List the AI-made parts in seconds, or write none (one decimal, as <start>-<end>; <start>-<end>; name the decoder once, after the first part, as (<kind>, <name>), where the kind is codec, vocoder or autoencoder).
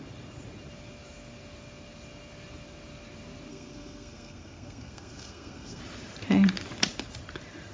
3.5-5.8 (codec, SNAC)